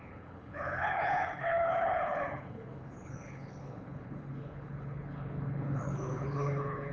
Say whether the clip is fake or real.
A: fake